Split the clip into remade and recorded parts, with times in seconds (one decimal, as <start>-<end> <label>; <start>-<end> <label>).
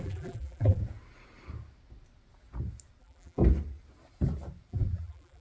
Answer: 0.0-0.8 remade; 0.8-3.0 recorded; 3.0-3.4 remade; 3.4-4.7 recorded; 4.7-5.4 remade